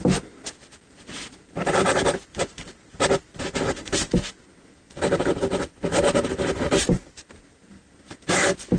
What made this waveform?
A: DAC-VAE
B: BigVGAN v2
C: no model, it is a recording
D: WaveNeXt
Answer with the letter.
C